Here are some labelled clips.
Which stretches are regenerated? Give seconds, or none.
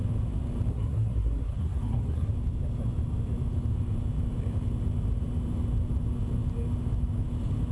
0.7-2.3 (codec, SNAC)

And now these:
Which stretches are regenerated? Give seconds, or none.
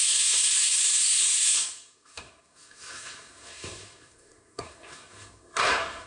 0.0-6.1 (codec, SNAC)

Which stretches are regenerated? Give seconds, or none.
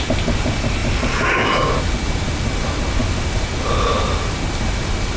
none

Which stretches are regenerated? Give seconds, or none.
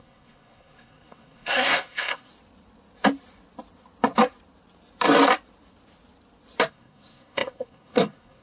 0.0-2.3 (codec, SNAC); 6.7-8.4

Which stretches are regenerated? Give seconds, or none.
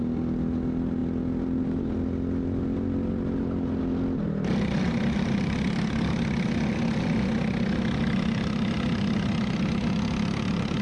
none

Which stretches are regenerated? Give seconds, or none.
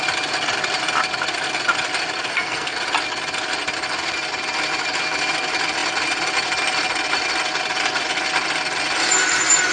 2.3-2.8 (codec, SNAC)